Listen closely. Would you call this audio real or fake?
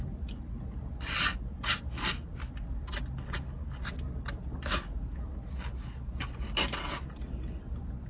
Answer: real